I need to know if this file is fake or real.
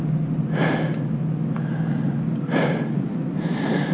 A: real